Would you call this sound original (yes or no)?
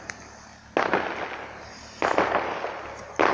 yes